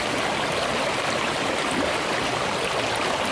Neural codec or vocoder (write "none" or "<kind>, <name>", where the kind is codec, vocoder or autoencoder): none